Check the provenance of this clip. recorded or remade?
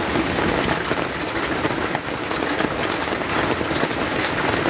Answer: recorded